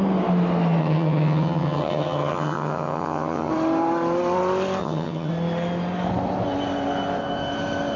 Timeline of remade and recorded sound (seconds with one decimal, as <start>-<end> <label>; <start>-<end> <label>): 0.0-0.8 recorded; 0.8-3.5 remade; 3.5-4.8 recorded; 4.8-5.3 remade; 5.3-8.0 recorded